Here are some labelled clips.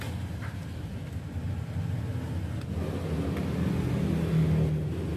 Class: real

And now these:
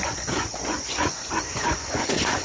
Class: fake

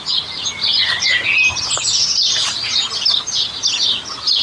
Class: real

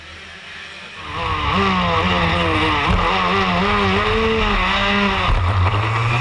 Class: real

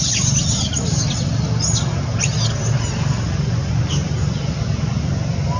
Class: real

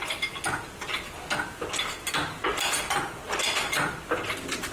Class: real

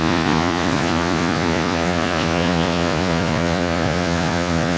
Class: fake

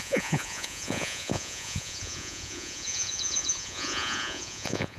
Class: fake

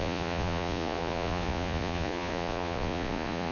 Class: fake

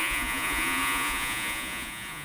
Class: fake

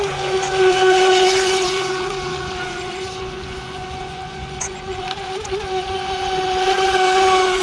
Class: fake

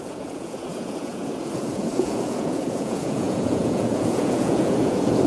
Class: fake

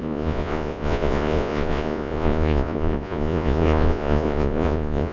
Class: fake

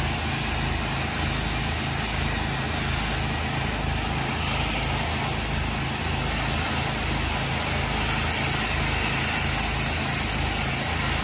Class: real